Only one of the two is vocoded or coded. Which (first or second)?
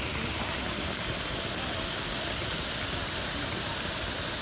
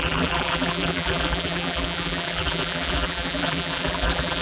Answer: second